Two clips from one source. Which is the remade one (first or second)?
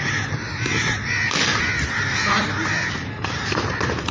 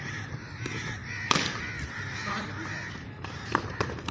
second